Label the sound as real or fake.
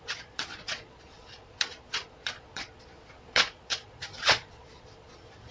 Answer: fake